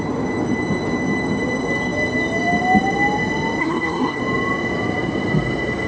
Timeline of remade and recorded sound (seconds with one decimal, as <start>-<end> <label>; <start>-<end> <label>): 0.0-3.6 recorded; 3.6-4.2 remade; 4.2-5.9 recorded